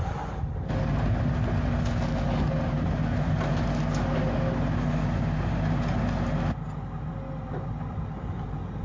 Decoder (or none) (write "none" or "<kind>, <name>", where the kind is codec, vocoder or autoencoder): none